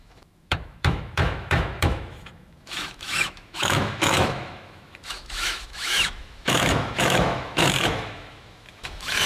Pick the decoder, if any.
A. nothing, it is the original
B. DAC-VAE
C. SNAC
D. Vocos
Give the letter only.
B